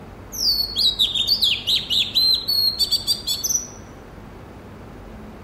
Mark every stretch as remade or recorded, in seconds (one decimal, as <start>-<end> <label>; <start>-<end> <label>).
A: 0.0-5.4 recorded